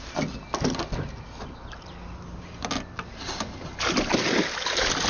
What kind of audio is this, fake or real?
real